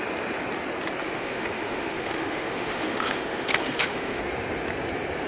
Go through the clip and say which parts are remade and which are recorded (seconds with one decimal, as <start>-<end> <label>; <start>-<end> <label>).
0.0-1.0 recorded; 1.0-4.2 remade; 4.2-5.3 recorded